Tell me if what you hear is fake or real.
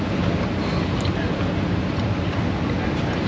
real